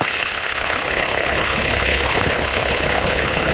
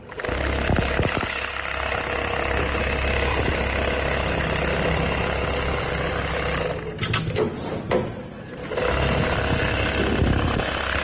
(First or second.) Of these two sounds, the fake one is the first